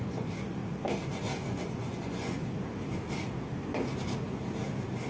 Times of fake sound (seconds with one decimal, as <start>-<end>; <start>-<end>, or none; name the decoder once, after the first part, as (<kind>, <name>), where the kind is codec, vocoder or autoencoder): 0.0-0.6 (vocoder, Vocos); 1.5-2.4